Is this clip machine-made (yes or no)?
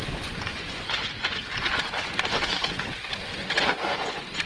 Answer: yes